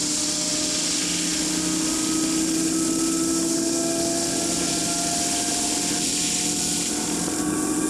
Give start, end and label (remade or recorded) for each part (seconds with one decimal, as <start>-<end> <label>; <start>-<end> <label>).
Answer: 0.0-7.9 recorded